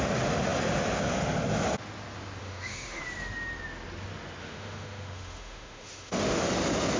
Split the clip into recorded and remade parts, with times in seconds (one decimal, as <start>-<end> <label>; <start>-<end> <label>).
0.0-2.4 recorded; 2.4-3.0 remade; 3.0-4.4 recorded; 4.4-6.5 remade; 6.5-7.0 recorded